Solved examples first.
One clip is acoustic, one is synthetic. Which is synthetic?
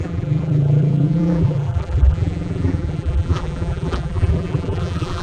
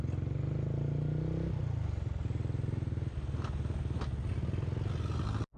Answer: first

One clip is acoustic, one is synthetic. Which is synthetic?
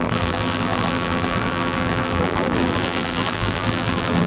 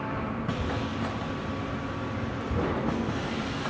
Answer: first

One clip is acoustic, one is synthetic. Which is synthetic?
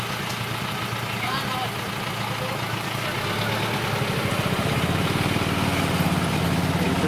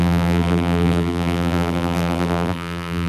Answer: second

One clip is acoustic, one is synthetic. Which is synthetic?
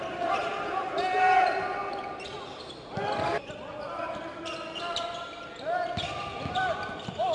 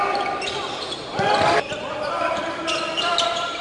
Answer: second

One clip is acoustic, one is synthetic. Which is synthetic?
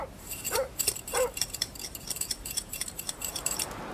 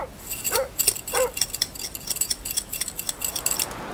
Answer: first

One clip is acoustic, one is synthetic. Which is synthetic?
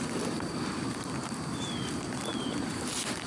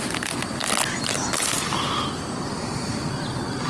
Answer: first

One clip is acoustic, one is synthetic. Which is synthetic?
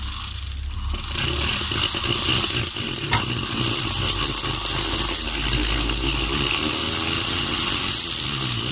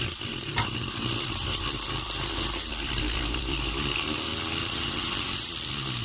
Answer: second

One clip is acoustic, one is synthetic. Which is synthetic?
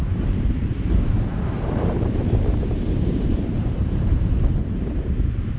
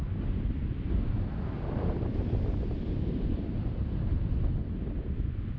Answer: first